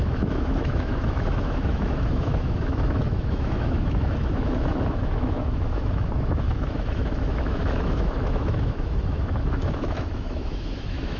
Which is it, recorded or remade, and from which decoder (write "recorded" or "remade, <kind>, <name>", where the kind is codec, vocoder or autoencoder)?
remade, autoencoder, DAC-VAE